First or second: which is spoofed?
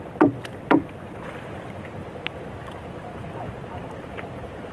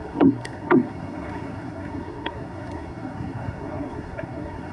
second